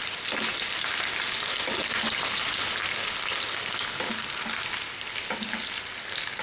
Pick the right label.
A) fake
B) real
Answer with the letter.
B